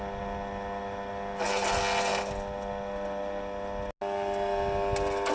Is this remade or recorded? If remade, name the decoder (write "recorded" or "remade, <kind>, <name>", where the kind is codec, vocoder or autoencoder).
recorded